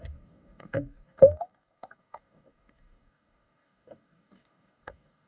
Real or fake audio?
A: fake